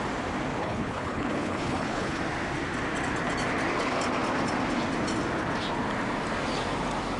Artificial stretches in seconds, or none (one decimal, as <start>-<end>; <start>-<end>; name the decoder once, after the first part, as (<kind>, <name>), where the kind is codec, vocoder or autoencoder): 0.6-2.2 (codec, HILCodec)